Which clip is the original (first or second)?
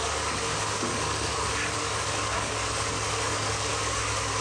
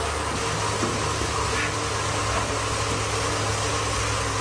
second